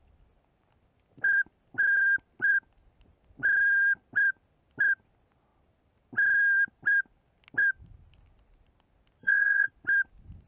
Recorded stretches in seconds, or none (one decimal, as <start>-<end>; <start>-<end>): 0.0-9.2; 9.7-10.5